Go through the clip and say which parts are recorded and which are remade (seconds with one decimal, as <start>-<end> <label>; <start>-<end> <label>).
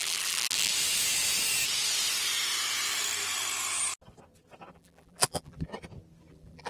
0.0-0.7 remade; 0.7-4.7 recorded; 4.7-5.7 remade; 5.7-6.3 recorded; 6.3-6.7 remade